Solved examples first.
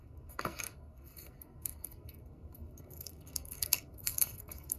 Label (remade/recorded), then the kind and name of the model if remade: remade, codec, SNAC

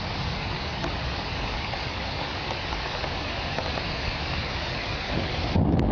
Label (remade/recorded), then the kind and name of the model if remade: remade, codec, DAC